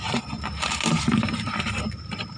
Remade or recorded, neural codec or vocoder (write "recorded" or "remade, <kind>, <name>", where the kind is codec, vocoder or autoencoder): remade, vocoder, BigVGAN v2